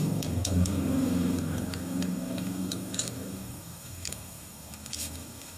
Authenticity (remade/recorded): remade